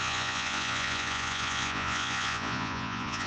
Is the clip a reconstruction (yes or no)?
yes